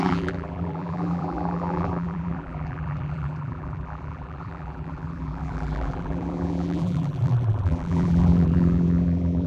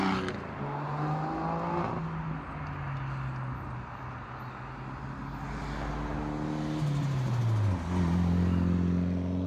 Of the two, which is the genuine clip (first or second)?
second